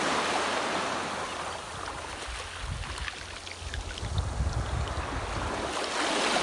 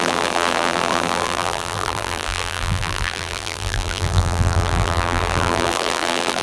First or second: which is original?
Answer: first